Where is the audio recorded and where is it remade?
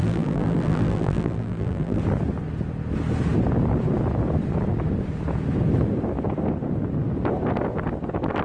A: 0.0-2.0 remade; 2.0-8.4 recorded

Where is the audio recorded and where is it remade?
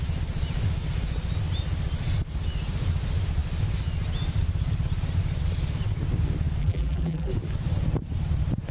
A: 0.0-6.6 recorded; 6.6-7.3 remade; 7.3-8.7 recorded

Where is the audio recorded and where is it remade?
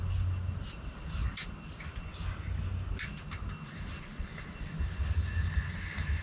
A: 0.0-2.1 recorded; 2.1-2.9 remade; 2.9-6.2 recorded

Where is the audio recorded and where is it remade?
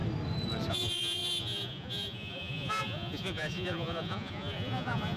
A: 0.0-0.7 recorded; 0.7-5.2 remade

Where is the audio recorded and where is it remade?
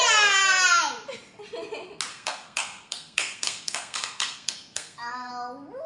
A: 0.0-2.1 recorded; 2.1-5.3 remade; 5.3-5.9 recorded